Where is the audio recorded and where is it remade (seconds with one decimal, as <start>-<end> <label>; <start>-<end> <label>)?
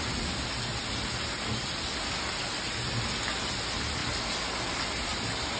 0.0-5.6 recorded